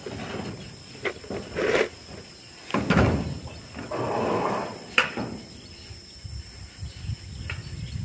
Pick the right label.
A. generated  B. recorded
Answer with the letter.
B